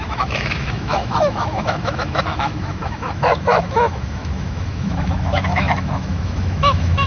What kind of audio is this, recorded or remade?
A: remade